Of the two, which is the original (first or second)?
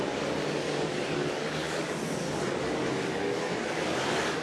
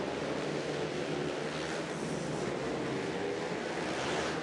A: second